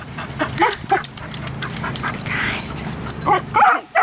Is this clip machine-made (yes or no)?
yes